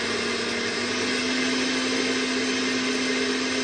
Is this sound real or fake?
real